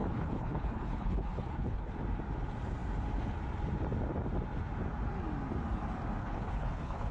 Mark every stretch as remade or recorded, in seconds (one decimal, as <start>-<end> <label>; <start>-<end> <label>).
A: 0.0-1.9 remade; 1.9-6.2 recorded; 6.2-7.1 remade